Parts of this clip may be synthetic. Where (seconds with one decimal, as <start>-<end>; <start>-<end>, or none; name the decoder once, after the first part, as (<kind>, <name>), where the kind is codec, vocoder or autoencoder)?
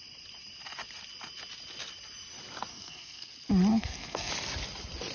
2.7-3.3 (codec, SNAC); 3.7-4.3